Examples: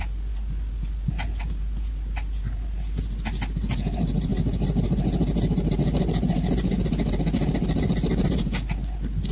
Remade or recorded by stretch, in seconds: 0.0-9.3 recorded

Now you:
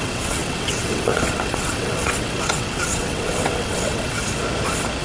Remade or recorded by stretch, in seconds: 0.0-4.2 remade; 4.2-5.0 recorded

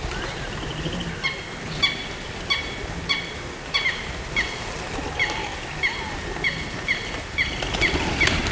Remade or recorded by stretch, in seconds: 0.0-8.5 recorded

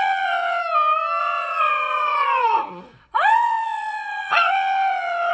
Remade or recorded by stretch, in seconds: 0.0-0.6 remade; 0.6-1.2 recorded; 1.2-5.3 remade

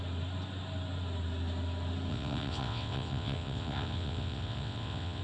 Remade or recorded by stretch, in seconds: 0.0-2.1 recorded; 2.1-5.2 remade